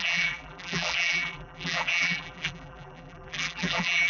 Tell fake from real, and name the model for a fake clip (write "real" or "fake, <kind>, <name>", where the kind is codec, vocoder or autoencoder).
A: fake, vocoder, BigVGAN v2